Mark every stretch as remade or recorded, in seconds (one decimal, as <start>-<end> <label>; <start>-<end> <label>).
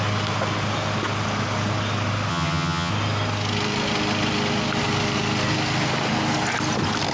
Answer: 0.0-2.3 recorded; 2.3-2.9 remade; 2.9-7.1 recorded